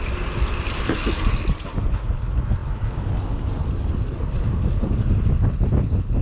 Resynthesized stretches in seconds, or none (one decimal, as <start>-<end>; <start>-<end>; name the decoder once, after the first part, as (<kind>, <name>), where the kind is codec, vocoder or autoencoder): none